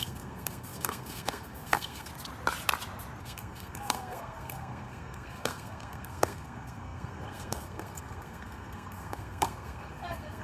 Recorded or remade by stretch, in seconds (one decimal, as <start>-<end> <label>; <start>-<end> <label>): 0.0-2.1 remade; 2.1-3.2 recorded; 3.2-10.4 remade